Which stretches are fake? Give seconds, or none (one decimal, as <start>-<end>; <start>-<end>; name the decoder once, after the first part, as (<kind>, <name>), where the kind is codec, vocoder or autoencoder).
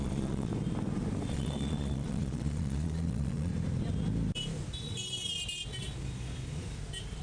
0.0-0.5 (vocoder, Vocos); 1.3-3.5